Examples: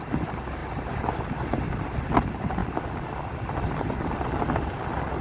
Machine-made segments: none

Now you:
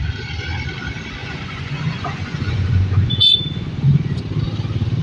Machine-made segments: 1.2-4.2 (vocoder, Vocos)

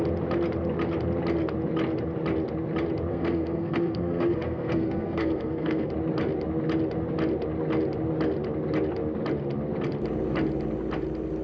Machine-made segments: 3.1-5.9 (codec, SNAC)

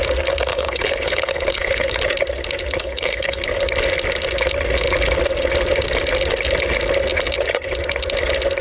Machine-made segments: 0.5-2.0 (codec, HILCodec); 2.8-3.4